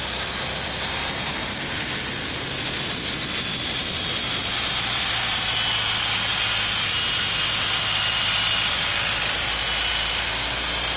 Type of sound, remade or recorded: recorded